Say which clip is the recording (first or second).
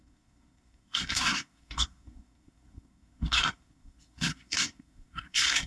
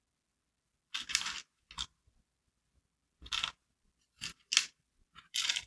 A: second